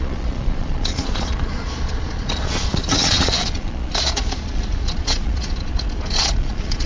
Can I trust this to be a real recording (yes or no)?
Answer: no